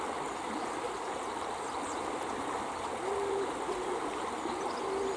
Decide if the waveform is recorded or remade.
recorded